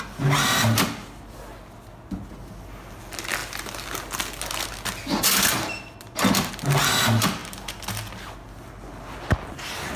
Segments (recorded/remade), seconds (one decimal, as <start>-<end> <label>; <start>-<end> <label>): 0.0-10.0 recorded